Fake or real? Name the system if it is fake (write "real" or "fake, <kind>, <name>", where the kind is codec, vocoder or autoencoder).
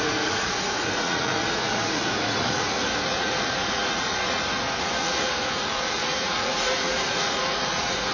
fake, vocoder, Vocos